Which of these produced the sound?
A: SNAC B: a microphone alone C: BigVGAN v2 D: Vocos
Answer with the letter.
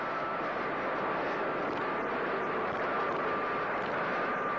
B